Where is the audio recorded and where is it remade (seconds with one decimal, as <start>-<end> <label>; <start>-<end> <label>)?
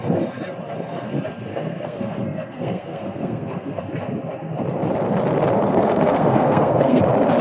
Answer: 0.0-1.5 recorded; 1.5-3.8 remade; 3.8-5.7 recorded; 5.7-7.0 remade; 7.0-7.4 recorded